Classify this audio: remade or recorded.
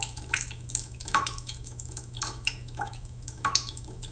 remade